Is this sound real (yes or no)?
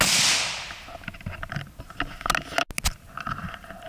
yes